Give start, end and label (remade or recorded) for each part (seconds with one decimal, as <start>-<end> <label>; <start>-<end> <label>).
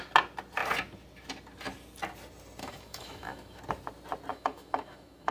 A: 0.0-2.6 recorded; 2.6-3.6 remade; 3.6-4.3 recorded; 4.3-5.3 remade